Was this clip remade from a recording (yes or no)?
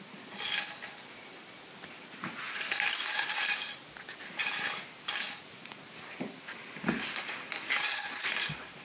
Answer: no